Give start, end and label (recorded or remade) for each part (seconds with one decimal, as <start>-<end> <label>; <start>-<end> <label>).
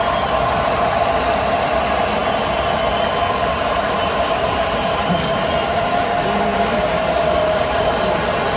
0.0-3.5 recorded; 3.5-5.1 remade; 5.1-6.5 recorded; 6.5-8.0 remade; 8.0-8.6 recorded